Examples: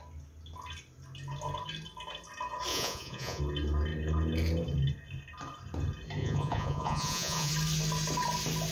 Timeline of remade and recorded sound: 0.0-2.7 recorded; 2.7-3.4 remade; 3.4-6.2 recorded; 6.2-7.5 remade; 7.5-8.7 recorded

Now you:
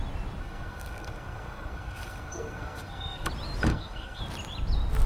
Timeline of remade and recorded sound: 0.0-0.4 recorded; 0.4-3.3 remade; 3.3-3.7 recorded; 3.7-4.2 remade; 4.2-5.1 recorded

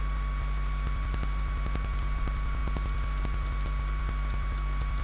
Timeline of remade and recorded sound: 0.0-5.0 recorded

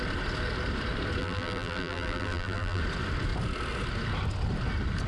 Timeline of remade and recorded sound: 0.0-1.2 recorded; 1.2-2.8 remade; 2.8-5.1 recorded

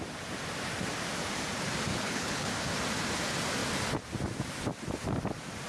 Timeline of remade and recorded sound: 0.0-1.9 recorded; 1.9-2.5 remade; 2.5-5.7 recorded

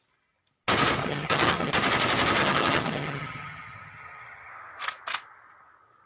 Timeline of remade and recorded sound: 0.0-1.0 recorded; 1.0-1.7 remade; 1.7-2.4 recorded; 2.4-4.5 remade; 4.5-6.1 recorded

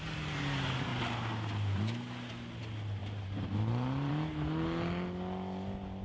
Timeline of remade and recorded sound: 0.0-3.0 recorded; 3.0-4.1 remade; 4.1-6.0 recorded

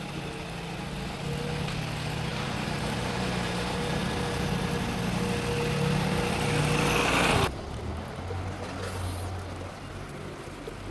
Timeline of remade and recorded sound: 0.0-2.3 recorded; 2.3-4.0 remade; 4.0-10.9 recorded